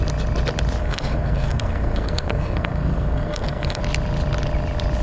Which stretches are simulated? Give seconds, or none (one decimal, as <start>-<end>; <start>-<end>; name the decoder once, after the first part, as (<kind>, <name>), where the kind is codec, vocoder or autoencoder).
0.8-3.8 (codec, SNAC)